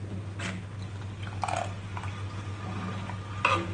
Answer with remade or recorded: recorded